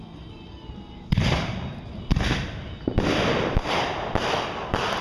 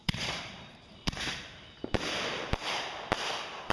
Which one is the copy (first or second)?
second